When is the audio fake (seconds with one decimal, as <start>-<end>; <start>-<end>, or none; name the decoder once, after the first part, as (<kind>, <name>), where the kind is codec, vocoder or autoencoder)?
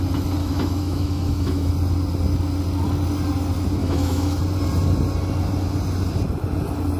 0.4-1.7 (autoencoder, DAC-VAE); 3.8-4.4